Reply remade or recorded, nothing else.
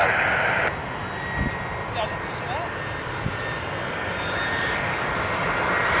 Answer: recorded